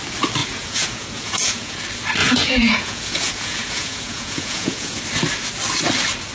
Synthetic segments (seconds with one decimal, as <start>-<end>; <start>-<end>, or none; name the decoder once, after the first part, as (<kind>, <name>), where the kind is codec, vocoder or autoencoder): 0.4-1.8 (vocoder, Vocos); 2.2-5.0